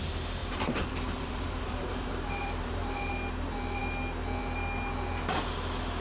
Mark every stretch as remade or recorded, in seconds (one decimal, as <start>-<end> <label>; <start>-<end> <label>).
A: 0.0-0.4 recorded; 0.4-3.0 remade; 3.0-6.0 recorded